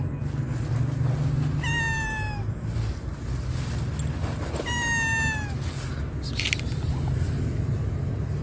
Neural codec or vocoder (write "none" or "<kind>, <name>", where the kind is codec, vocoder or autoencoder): none